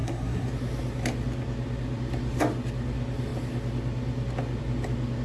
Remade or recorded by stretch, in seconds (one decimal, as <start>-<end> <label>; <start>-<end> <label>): 0.0-0.5 remade; 0.5-5.2 recorded